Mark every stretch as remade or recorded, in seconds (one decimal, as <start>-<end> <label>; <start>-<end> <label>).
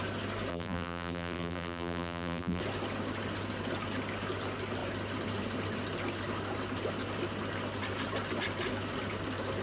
0.0-0.5 recorded; 0.5-2.6 remade; 2.6-9.6 recorded